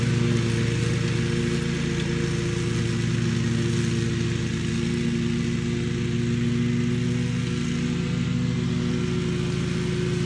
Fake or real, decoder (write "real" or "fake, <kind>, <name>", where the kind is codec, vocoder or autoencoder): real